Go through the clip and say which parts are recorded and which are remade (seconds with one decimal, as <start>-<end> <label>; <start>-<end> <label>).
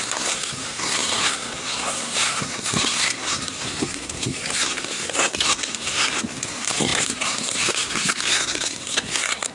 0.0-9.5 remade